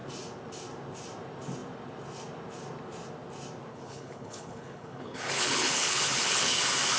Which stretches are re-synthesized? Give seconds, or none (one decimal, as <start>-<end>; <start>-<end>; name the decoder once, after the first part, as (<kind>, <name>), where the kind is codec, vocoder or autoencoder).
3.7-6.6 (codec, HILCodec)

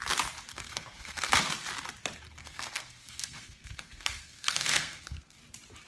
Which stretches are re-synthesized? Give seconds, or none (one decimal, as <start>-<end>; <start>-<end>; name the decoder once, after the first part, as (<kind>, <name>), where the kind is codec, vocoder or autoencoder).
0.5-1.4 (codec, SNAC); 2.4-5.4

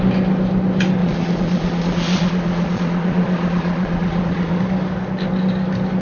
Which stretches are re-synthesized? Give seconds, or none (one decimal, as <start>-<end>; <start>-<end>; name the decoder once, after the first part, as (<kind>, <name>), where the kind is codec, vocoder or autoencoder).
1.0-4.6 (vocoder, Vocos)

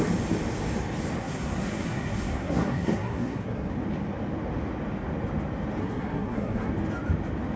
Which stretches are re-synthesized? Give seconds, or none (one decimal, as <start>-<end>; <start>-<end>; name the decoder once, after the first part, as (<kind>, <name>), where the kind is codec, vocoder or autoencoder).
1.2-3.7 (codec, SNAC); 5.8-6.7